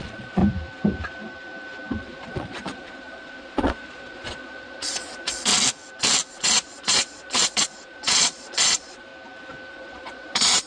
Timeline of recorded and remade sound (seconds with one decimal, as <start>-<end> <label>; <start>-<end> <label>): 0.0-0.4 remade; 0.4-2.0 recorded; 2.0-5.5 remade; 5.5-6.3 recorded; 6.3-9.1 remade; 9.1-9.7 recorded; 9.7-10.7 remade